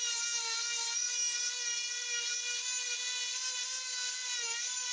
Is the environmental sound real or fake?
real